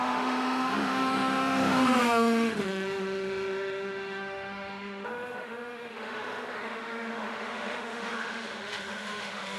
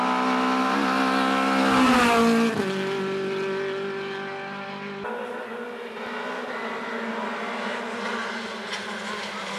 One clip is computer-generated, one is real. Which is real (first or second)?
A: second